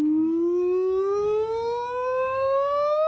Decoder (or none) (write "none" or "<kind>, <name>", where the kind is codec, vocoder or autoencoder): codec, DAC